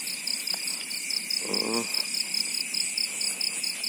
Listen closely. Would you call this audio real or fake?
real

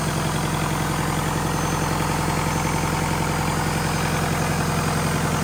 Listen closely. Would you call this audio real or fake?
real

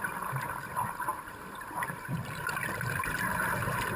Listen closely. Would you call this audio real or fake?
fake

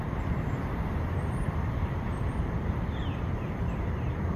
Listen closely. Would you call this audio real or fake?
fake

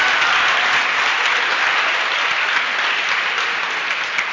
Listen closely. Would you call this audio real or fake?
real